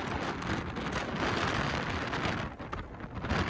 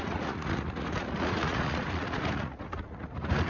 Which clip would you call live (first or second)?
first